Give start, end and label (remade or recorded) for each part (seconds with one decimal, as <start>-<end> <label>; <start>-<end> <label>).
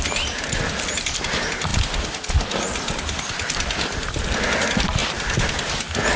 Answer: 0.0-6.2 recorded